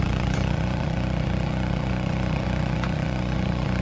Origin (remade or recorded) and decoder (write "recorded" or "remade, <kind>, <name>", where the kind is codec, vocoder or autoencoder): remade, vocoder, Vocos